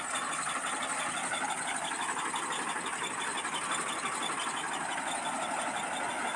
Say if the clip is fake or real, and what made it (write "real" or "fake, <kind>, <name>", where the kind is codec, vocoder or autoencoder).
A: real